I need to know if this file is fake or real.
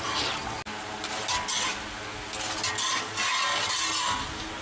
real